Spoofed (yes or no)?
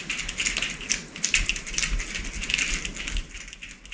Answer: no